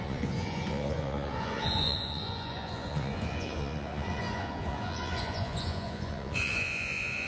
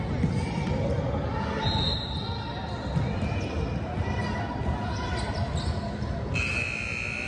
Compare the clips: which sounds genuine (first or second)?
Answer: second